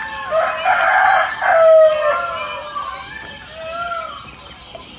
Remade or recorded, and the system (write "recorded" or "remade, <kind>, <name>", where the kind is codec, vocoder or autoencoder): recorded